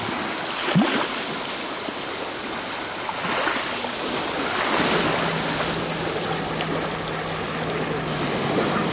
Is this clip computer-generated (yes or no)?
no